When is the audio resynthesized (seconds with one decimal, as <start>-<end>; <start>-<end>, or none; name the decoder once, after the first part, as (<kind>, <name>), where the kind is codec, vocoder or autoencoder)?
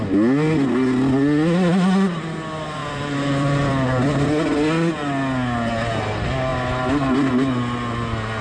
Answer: 2.8-4.3 (vocoder, BigVGAN v2)